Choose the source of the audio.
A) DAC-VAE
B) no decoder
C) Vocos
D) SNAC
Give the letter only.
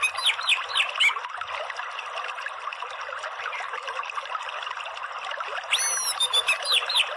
B